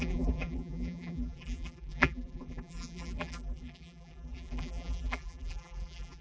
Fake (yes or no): yes